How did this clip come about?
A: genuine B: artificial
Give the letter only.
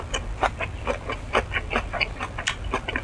A